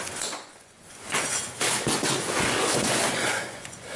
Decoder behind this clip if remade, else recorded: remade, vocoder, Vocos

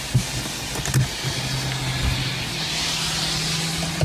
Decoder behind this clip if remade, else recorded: recorded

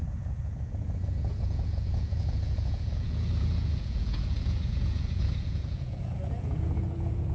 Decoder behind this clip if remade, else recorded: remade, vocoder, Vocos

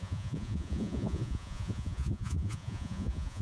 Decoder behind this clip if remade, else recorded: remade, vocoder, Vocos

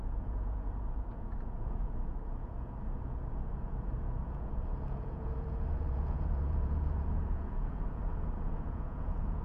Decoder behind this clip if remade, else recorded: remade, vocoder, Vocos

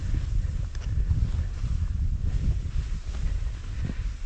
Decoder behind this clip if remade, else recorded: recorded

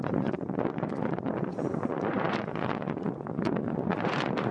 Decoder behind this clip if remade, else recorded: remade, vocoder, Vocos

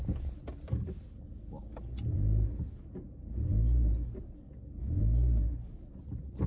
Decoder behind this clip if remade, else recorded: recorded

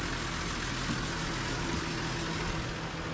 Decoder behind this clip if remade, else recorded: recorded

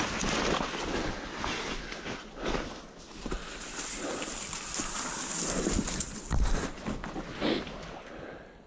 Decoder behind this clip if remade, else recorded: recorded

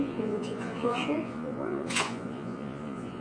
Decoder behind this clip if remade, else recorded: remade, vocoder, Vocos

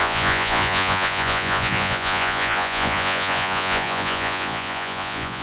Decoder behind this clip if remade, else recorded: remade, vocoder, Vocos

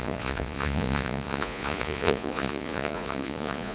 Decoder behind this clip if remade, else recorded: remade, vocoder, Vocos